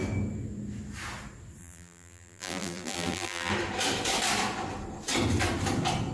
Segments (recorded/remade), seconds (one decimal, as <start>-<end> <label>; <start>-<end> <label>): 0.0-1.6 recorded; 1.6-3.5 remade; 3.5-6.1 recorded